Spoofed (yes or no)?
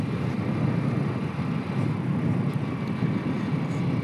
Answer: no